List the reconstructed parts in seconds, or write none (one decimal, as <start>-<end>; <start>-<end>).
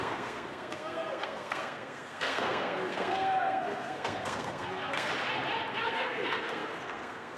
0.0-5.1; 5.7-7.4